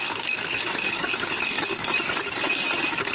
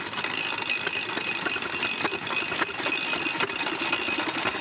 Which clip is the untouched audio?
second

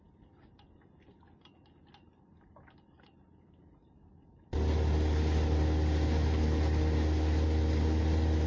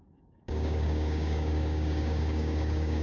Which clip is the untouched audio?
first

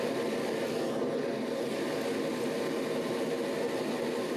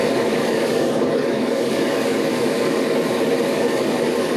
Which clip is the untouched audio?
first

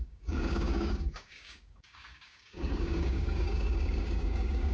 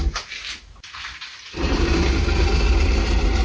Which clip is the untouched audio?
second